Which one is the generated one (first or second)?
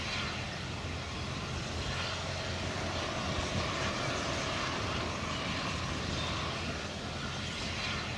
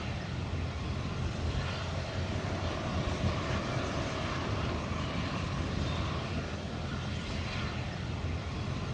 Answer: second